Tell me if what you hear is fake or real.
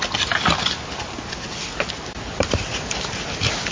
real